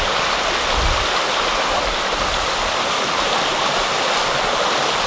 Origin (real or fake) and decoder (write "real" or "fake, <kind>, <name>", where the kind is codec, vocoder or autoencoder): real